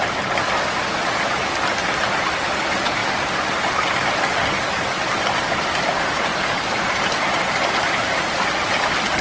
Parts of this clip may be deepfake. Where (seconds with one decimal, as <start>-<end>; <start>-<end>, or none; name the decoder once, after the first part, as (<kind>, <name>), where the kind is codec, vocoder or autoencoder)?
6.3-8.2 (vocoder, BigVGAN v2)